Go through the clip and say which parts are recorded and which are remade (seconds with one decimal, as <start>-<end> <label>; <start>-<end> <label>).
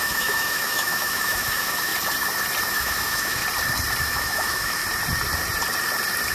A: 0.0-1.9 remade; 1.9-2.7 recorded; 2.7-3.4 remade; 3.4-4.0 recorded; 4.0-4.8 remade; 4.8-6.3 recorded